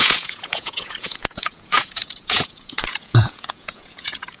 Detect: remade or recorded remade